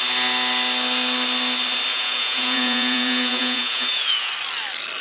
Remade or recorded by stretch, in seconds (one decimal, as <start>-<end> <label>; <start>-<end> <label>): 0.0-1.9 recorded; 1.9-4.3 remade; 4.3-5.0 recorded